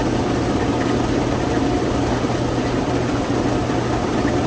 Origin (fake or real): real